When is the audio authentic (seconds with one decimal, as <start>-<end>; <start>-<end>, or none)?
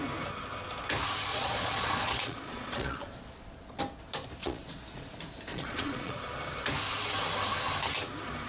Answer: 0.0-1.3; 3.8-4.4; 5.1-5.5; 6.2-8.5